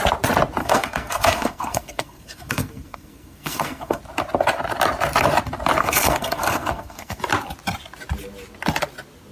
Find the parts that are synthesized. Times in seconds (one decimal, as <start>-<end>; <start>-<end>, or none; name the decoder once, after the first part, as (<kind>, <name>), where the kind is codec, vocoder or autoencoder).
0.6-4.0 (codec, SNAC); 5.8-7.2